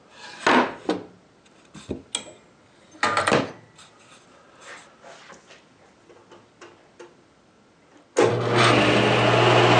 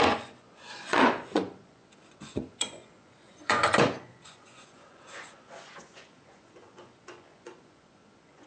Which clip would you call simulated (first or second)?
second